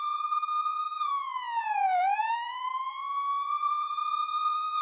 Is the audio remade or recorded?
remade